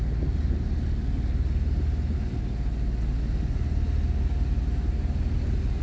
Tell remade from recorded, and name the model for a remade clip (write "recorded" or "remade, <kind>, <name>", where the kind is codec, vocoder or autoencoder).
recorded